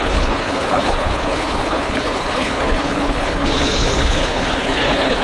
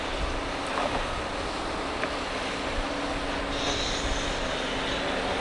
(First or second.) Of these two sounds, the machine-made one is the first